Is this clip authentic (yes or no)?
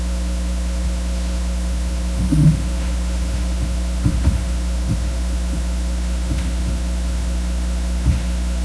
no